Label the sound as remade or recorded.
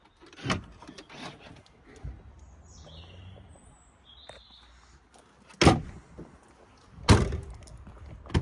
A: recorded